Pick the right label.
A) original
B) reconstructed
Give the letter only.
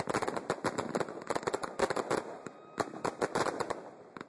A